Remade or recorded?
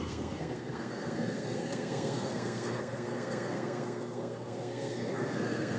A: remade